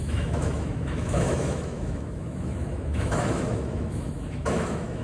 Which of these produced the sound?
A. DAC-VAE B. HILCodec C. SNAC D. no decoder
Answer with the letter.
A